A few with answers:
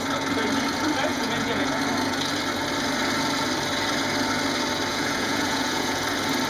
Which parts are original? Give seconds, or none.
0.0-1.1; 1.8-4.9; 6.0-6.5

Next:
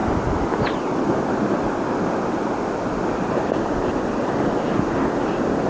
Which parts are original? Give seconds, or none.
0.0-5.7

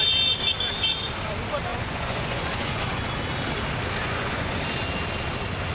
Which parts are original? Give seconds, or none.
0.0-1.7; 3.1-4.0; 4.6-5.7

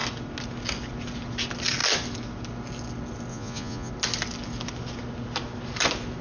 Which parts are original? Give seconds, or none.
0.0-3.3; 3.9-6.2